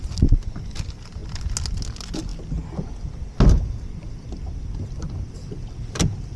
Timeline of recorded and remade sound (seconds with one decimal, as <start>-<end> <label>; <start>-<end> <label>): 0.0-6.4 recorded